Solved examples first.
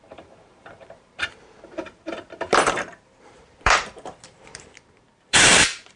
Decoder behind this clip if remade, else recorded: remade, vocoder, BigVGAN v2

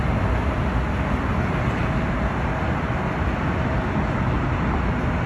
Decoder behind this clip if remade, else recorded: recorded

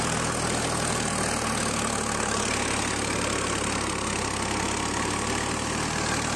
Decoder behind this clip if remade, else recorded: recorded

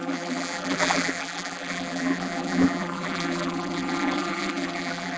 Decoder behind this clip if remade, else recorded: remade, vocoder, BigVGAN v2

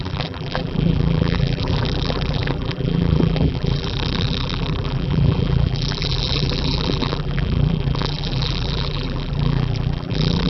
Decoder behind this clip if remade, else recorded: remade, vocoder, BigVGAN v2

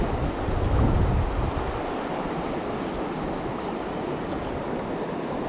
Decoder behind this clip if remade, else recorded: recorded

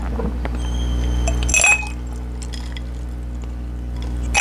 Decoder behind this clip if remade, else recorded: recorded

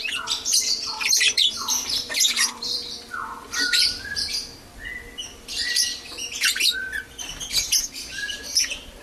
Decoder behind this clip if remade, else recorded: remade, vocoder, BigVGAN v2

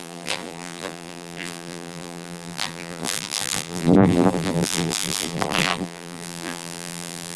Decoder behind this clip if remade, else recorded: remade, vocoder, BigVGAN v2